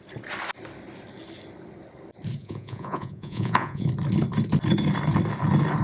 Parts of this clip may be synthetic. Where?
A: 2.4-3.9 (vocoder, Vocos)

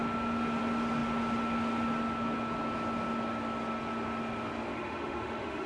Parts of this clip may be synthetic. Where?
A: 4.7-5.7 (autoencoder, DAC-VAE)

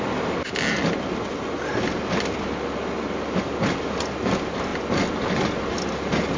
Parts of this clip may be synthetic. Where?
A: none